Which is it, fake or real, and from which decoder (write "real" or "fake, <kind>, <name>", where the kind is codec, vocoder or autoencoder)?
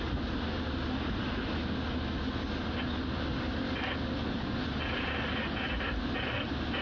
real